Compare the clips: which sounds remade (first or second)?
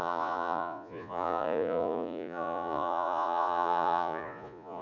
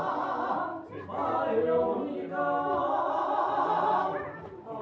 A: first